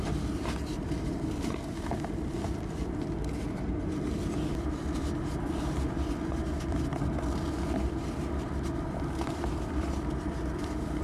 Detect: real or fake fake